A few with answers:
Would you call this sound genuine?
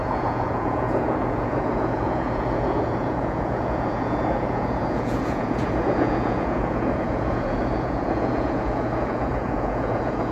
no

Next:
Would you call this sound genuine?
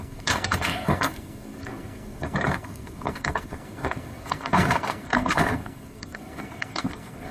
no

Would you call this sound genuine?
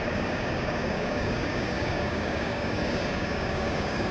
no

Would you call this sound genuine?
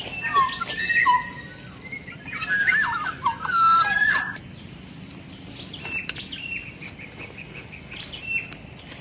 yes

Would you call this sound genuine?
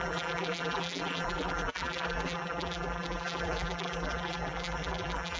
no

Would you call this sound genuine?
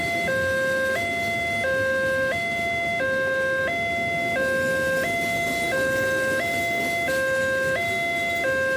yes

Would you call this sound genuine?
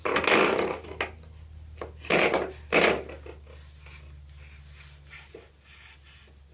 yes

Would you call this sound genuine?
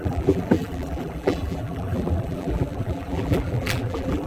no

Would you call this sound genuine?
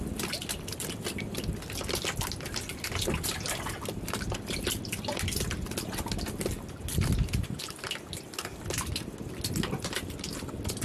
yes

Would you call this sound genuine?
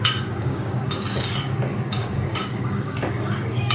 no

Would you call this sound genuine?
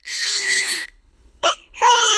no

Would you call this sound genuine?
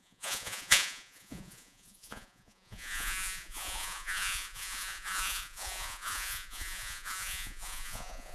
no